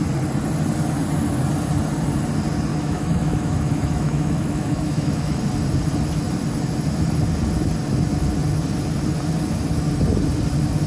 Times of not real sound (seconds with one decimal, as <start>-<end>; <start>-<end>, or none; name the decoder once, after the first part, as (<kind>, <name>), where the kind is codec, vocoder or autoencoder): 2.7-5.4 (autoencoder, DAC-VAE)